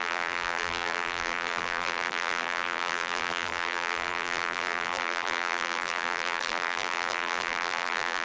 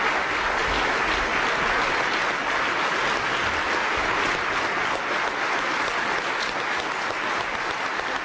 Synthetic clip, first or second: first